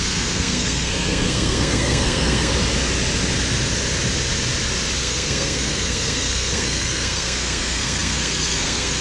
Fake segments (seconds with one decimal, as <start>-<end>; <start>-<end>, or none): 0.0-2.5; 5.0-9.0